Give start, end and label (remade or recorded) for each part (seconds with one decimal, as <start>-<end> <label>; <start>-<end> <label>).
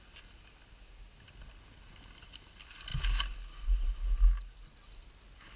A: 0.0-5.6 recorded